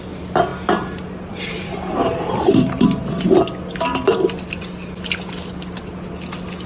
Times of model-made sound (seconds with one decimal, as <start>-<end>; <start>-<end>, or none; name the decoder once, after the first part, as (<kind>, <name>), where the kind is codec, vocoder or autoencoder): 0.5-3.1 (vocoder, BigVGAN v2); 3.9-4.7